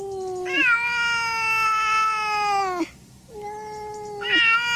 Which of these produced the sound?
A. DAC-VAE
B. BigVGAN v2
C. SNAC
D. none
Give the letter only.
D